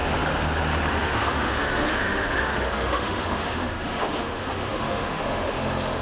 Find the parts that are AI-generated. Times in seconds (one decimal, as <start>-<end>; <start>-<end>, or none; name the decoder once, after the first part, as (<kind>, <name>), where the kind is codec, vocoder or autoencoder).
0.9-6.0 (autoencoder, DAC-VAE)